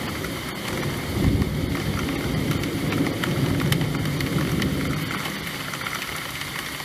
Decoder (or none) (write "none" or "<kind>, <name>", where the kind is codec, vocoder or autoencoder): none